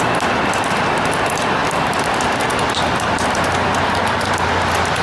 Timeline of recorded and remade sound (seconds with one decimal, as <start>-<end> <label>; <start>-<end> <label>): 0.0-5.0 recorded